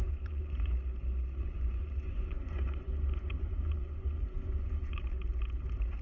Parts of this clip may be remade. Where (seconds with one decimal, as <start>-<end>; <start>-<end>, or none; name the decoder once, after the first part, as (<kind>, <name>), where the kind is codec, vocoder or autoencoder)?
0.0-0.7 (vocoder, Vocos); 1.4-5.0